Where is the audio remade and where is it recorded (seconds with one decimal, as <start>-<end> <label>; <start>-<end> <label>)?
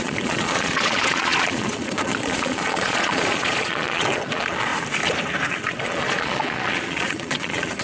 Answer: 0.0-4.7 remade; 4.7-5.5 recorded; 5.5-7.8 remade